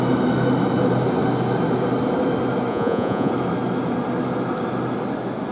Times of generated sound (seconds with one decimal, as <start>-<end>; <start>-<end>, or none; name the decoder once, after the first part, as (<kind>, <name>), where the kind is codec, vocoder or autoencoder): 2.7-3.3 (vocoder, Vocos)